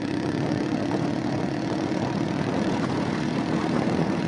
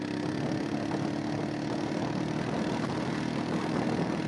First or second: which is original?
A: second